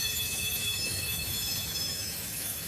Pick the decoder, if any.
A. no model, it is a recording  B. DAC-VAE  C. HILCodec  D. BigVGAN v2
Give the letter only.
B